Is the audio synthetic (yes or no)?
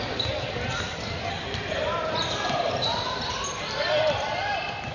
yes